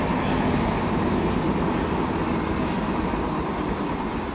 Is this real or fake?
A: real